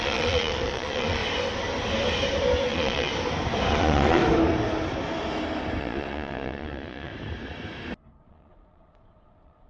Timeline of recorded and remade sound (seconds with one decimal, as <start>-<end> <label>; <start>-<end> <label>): 0.0-1.2 remade; 1.2-2.7 recorded; 2.7-3.1 remade; 3.1-3.7 recorded; 3.7-4.2 remade; 4.2-5.8 recorded; 5.8-7.1 remade; 7.1-8.2 recorded; 8.2-9.7 remade